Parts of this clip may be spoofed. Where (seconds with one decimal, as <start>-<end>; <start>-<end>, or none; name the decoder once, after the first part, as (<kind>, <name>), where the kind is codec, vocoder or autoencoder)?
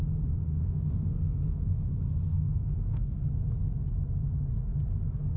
0.5-1.9 (codec, SNAC); 2.3-3.3